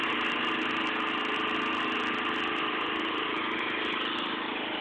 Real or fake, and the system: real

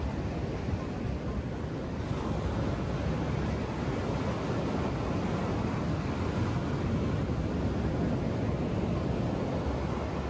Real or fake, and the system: real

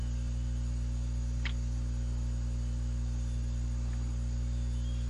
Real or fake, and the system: real